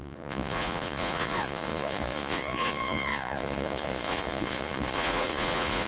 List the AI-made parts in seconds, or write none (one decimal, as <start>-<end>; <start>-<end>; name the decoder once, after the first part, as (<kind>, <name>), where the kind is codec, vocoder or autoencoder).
0.0-5.9 (vocoder, Vocos)